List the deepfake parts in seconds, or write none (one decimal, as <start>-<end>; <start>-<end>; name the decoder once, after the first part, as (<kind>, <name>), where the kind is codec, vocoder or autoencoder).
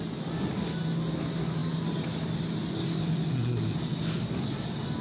none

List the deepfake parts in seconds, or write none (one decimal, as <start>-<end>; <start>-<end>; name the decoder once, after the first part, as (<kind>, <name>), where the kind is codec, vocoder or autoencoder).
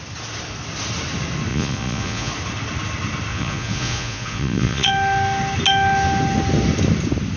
1.5-2.3 (vocoder, Vocos); 3.3-4.9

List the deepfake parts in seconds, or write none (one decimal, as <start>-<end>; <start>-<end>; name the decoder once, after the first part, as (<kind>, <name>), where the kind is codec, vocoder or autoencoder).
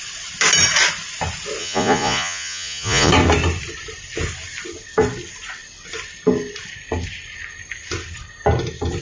1.6-3.1 (vocoder, Vocos)